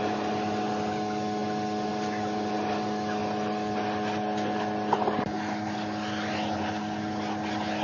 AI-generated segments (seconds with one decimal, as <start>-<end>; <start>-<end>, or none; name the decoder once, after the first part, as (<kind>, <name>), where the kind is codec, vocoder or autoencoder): none